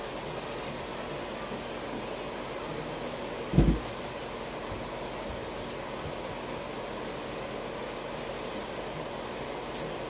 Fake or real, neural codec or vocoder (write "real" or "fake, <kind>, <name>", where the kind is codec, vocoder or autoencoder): real